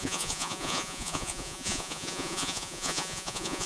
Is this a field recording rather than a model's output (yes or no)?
no